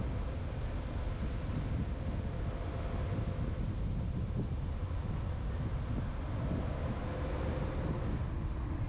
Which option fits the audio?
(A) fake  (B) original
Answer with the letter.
B